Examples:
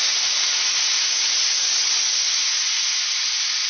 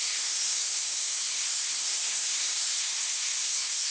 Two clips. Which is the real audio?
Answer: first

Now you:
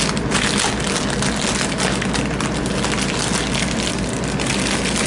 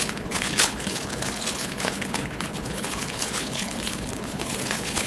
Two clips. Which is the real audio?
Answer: first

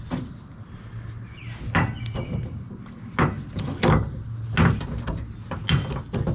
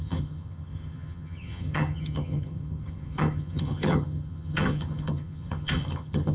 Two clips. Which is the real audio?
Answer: first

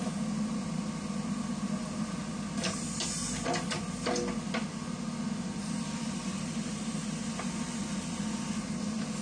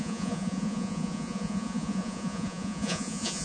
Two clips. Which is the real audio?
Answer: first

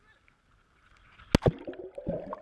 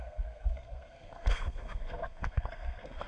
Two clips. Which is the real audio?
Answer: first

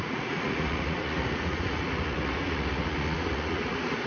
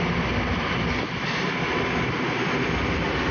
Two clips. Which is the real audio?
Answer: second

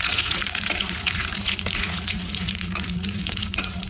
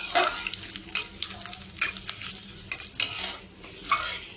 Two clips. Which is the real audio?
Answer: second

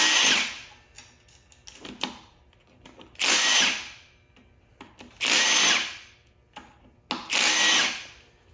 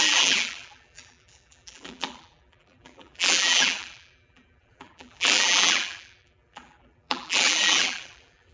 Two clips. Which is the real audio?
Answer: first